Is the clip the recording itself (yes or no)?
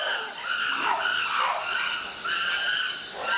yes